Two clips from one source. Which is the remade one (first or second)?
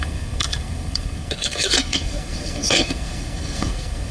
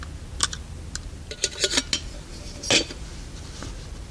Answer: first